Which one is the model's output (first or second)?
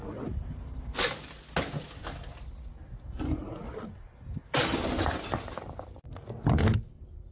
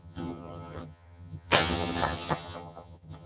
second